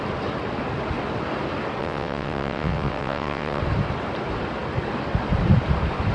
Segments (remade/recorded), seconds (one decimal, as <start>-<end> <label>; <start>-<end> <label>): 0.0-1.8 recorded; 1.8-3.6 remade; 3.6-6.1 recorded